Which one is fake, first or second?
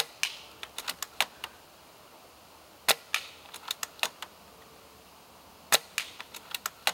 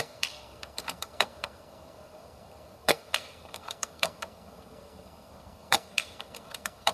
second